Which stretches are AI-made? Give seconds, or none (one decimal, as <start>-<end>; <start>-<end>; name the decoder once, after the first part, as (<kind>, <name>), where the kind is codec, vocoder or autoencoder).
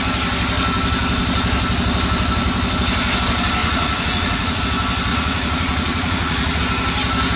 3.6-4.6 (vocoder, Vocos); 5.1-6.6